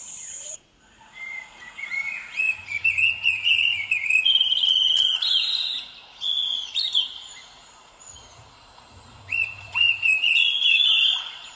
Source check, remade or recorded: remade